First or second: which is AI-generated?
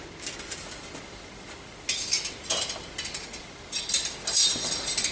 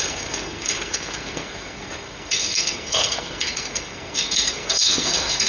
second